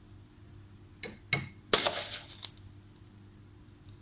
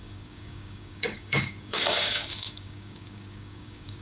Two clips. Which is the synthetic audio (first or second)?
second